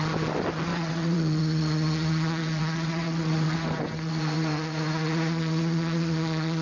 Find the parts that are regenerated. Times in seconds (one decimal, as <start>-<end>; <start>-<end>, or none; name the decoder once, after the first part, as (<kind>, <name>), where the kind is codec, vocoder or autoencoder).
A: 0.7-1.4 (vocoder, WaveNeXt); 2.4-4.1